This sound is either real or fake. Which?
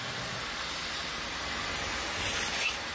real